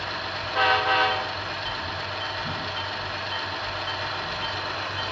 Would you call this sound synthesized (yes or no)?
no